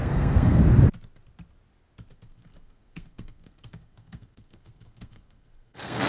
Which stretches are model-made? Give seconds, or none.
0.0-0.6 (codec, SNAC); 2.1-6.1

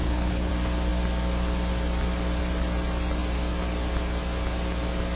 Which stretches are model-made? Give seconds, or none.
0.0-0.5 (codec, HILCodec)